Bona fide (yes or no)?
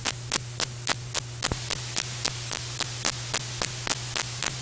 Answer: yes